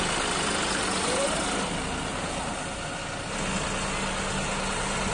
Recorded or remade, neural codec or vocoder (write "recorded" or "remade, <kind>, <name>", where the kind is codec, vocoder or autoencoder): recorded